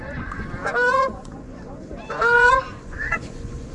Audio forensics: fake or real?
fake